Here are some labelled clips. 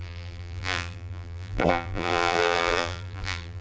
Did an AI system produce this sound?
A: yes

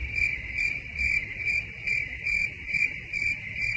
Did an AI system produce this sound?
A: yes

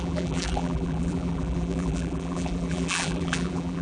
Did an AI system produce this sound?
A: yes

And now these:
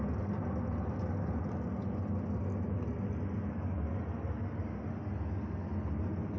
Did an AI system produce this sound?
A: no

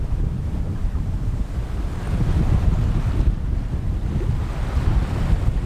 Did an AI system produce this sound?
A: no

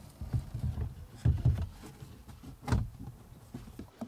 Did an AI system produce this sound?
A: yes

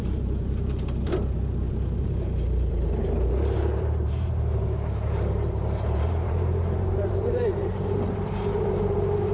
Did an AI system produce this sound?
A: yes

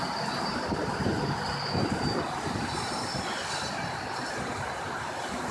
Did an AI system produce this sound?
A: no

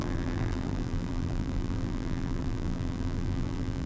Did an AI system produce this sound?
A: yes